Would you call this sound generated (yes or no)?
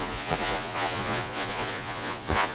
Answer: yes